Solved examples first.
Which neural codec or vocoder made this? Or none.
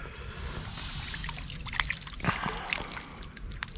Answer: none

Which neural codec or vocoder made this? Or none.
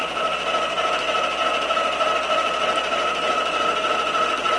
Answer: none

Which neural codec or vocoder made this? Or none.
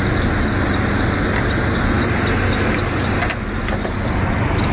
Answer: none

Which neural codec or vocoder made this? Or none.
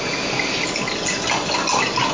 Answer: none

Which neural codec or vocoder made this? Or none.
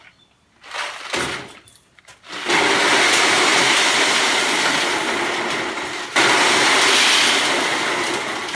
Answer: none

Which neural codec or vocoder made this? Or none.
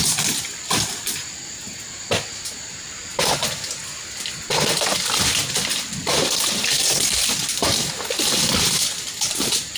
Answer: none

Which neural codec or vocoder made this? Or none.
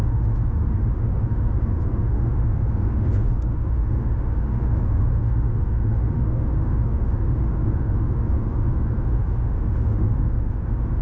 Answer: autoencoder, DAC-VAE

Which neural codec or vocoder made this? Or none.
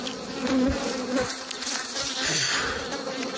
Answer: none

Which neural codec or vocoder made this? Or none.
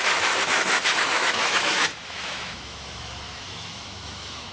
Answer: autoencoder, DAC-VAE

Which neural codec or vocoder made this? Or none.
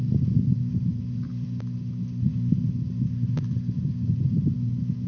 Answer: none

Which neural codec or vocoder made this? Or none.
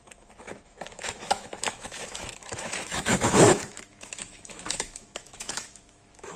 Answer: autoencoder, DAC-VAE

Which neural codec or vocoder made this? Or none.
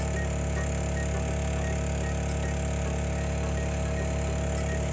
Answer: none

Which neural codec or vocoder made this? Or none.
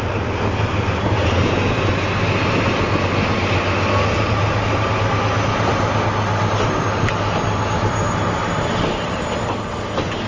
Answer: none